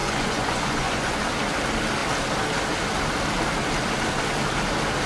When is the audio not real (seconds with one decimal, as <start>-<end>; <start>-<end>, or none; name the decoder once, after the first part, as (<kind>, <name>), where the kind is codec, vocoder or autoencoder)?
0.0-1.2 (vocoder, Vocos)